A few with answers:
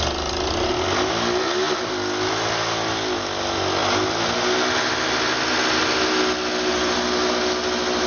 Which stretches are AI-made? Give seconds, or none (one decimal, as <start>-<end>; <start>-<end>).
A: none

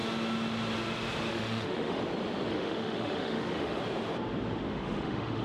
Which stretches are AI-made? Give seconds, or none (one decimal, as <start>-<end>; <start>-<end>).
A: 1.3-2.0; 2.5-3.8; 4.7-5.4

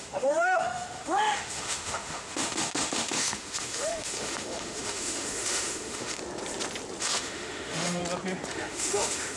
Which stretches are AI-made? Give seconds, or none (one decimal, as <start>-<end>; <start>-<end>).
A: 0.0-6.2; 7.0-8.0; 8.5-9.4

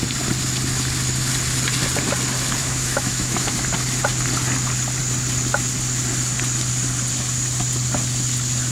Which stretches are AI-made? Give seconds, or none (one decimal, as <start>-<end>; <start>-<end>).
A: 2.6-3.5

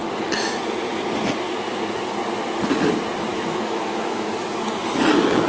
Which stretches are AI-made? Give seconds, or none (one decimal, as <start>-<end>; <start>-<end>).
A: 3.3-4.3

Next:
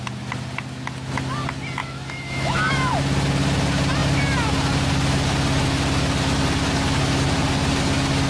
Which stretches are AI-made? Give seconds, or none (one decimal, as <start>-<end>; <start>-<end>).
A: 1.8-2.9

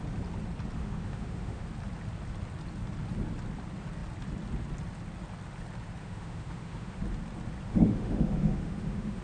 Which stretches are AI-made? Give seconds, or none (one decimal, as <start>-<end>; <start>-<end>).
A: 0.8-1.7; 6.0-7.0; 7.7-9.2

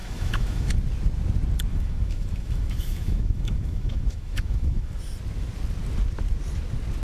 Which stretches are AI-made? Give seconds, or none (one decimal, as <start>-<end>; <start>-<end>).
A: 0.0-0.7; 1.7-5.0